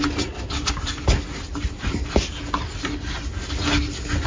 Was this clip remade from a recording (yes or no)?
no